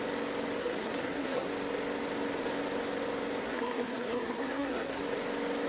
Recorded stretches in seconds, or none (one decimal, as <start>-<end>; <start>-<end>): 0.0-0.6; 1.5-3.4; 5.0-5.7